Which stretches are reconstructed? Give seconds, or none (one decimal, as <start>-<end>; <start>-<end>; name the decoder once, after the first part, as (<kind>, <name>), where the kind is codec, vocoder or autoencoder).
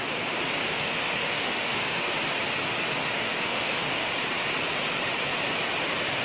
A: 0.7-2.1 (autoencoder, DAC-VAE); 3.0-4.1